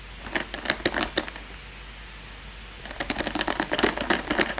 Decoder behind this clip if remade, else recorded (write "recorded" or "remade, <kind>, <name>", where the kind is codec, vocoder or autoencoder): recorded